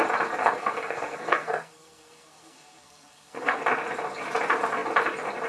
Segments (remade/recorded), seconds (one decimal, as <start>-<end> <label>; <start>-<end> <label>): 0.0-0.4 recorded; 0.4-3.6 remade; 3.6-5.5 recorded